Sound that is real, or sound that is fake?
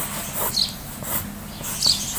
real